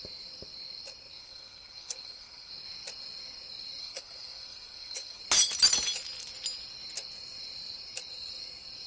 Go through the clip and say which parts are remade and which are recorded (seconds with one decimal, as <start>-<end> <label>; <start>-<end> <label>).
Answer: 0.0-1.2 recorded; 1.2-2.5 remade; 2.5-3.8 recorded; 3.8-5.2 remade; 5.2-8.9 recorded